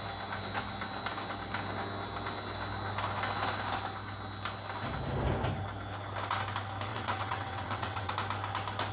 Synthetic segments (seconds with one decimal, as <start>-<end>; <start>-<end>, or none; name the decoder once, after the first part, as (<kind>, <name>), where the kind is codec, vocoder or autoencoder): 6.9-8.1 (vocoder, WaveNeXt)